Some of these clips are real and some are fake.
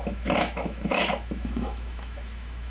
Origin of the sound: fake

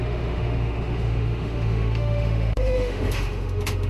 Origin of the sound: fake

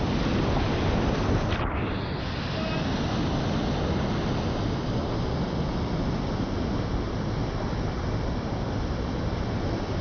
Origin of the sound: real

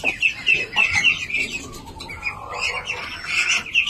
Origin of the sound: real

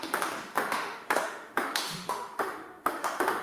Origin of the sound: fake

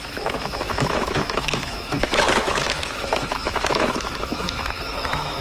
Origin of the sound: fake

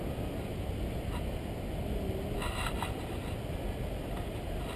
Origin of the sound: real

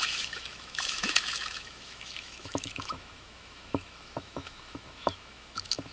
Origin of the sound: fake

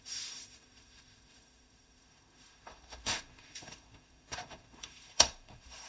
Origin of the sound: fake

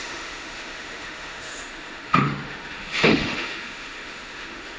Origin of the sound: fake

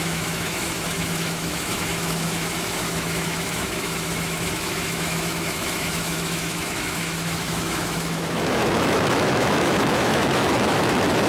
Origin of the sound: fake